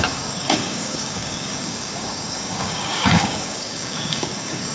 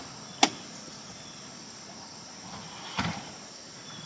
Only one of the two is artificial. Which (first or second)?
first